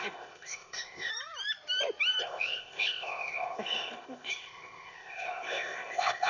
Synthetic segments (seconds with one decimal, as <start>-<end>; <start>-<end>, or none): 0.0-1.1; 2.2-6.3